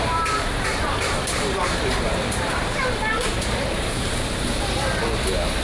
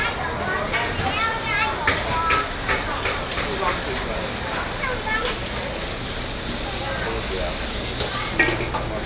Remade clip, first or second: first